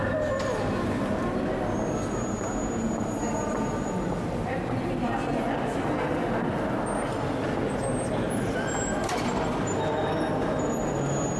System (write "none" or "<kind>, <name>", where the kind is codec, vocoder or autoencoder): none